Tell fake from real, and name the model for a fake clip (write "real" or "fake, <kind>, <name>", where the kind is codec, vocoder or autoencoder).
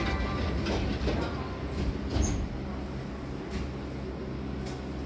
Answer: real